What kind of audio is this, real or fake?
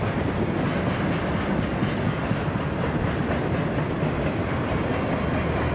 real